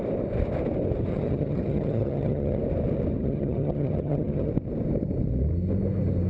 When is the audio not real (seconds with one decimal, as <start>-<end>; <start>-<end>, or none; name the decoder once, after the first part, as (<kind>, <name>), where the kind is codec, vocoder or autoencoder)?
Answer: 1.1-2.6 (vocoder, HiFi-GAN); 3.1-4.5